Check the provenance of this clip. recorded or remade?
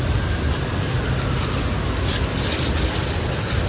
recorded